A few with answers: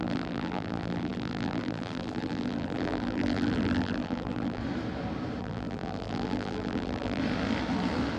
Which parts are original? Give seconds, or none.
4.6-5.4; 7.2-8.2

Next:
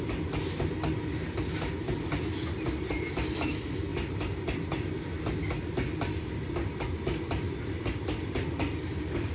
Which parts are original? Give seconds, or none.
0.0-9.3

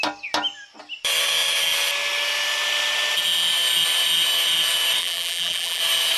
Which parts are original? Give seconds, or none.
0.0-5.0; 5.8-6.2

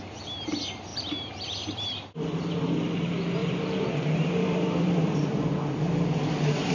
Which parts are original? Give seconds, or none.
0.0-0.9; 2.5-3.4

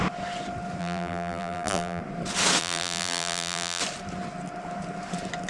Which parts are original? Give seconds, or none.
0.0-0.8; 2.0-2.6; 3.8-5.5

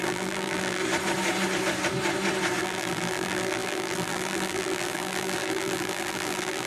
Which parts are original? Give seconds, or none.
0.8-2.6